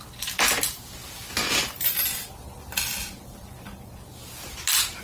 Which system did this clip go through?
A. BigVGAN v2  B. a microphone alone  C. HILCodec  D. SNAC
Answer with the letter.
B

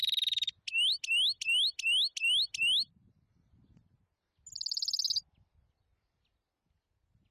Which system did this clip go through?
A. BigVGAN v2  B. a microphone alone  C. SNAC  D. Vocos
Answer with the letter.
B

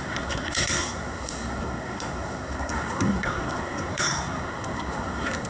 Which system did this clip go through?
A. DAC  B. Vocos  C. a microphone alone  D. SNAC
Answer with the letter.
D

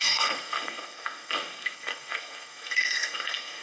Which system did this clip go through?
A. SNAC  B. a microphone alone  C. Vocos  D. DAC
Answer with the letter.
A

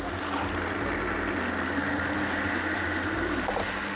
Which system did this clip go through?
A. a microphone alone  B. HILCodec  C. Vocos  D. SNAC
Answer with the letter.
A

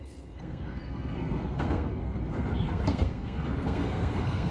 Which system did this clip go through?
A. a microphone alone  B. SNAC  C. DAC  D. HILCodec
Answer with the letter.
B